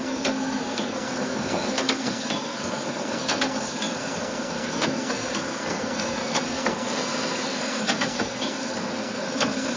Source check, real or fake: fake